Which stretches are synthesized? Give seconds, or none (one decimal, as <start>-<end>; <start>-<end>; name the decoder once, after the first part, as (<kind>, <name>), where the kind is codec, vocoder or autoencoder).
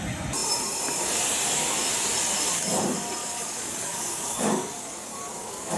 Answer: 3.2-5.8 (codec, DAC)